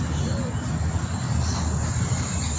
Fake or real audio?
real